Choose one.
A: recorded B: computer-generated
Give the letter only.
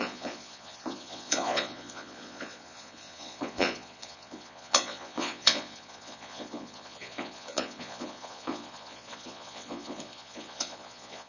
B